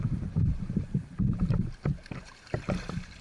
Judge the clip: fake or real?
fake